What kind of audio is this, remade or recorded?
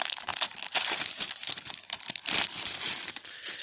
remade